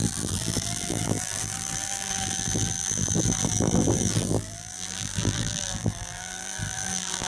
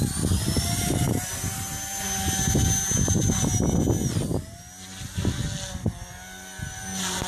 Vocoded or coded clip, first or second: first